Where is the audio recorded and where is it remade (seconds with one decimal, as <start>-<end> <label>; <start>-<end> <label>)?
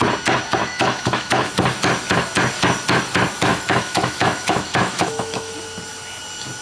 0.0-0.6 recorded; 0.6-1.5 remade; 1.5-3.5 recorded; 3.5-5.5 remade; 5.5-6.6 recorded